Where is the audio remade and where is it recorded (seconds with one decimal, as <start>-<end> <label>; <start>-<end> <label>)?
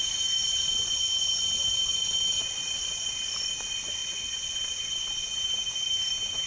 0.0-0.4 recorded; 0.4-2.0 remade; 2.0-2.6 recorded; 2.6-3.1 remade; 3.1-4.0 recorded; 4.0-5.3 remade; 5.3-6.5 recorded